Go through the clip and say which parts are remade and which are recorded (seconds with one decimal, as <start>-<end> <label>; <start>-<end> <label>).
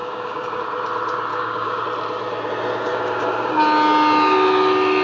0.0-0.6 remade; 0.6-1.3 recorded; 1.3-1.8 remade; 1.8-2.9 recorded; 2.9-3.5 remade; 3.5-5.0 recorded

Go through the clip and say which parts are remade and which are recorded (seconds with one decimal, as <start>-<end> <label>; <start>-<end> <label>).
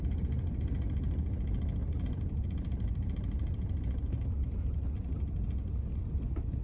0.0-6.6 recorded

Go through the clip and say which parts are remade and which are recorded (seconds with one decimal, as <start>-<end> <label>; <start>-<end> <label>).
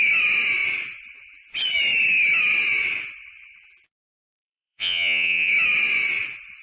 0.0-4.0 recorded; 4.0-5.5 remade; 5.5-6.6 recorded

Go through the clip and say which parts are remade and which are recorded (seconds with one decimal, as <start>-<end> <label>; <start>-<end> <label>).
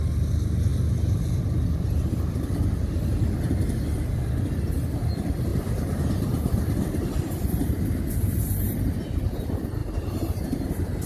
0.0-5.5 recorded; 5.5-6.0 remade; 6.0-9.8 recorded; 9.8-10.7 remade; 10.7-11.1 recorded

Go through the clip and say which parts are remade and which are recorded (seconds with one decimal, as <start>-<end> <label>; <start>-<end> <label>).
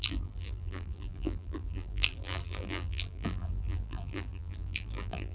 0.0-5.3 remade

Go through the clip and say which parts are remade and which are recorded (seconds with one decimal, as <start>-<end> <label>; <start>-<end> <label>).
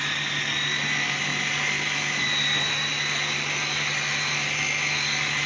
0.0-5.5 recorded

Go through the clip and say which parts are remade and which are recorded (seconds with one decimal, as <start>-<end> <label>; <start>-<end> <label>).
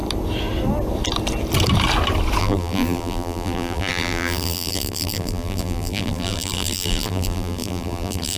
0.0-2.4 recorded; 2.4-8.4 remade